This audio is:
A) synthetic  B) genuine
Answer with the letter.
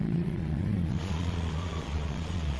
A